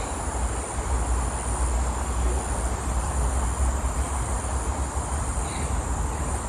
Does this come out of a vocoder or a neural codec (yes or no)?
no